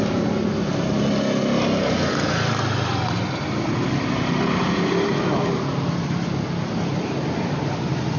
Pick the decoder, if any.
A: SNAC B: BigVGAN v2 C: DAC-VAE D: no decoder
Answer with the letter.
D